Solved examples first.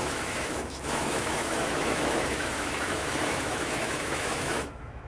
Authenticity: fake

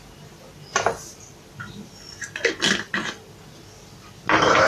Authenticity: real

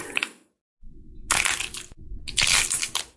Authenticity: real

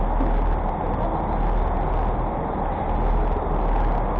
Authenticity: real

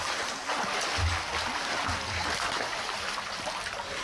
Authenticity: real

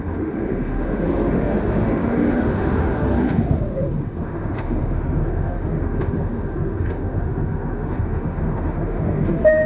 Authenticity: fake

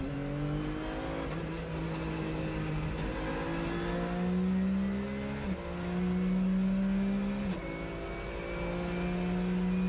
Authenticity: real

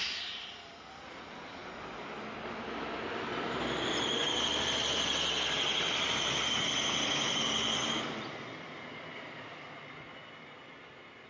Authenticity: real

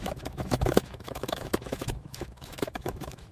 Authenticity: fake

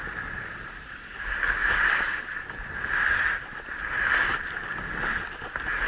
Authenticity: real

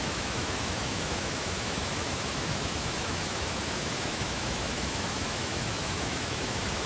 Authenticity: fake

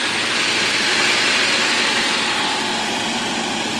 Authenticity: real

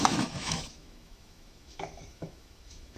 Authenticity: fake